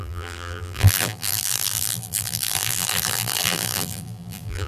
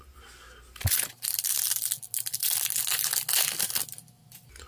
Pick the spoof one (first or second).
first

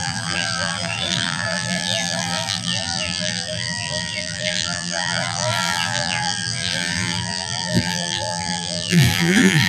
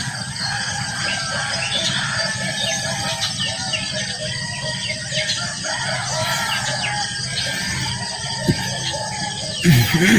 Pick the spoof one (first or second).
first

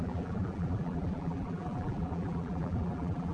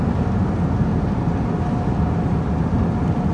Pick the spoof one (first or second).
first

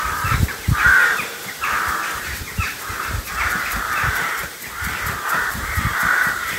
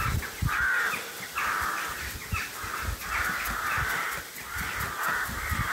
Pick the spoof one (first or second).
first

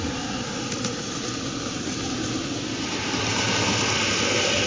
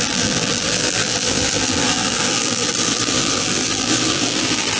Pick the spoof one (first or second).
second